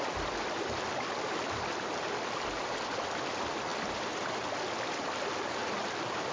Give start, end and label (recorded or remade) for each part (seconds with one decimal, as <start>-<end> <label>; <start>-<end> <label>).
0.0-6.3 recorded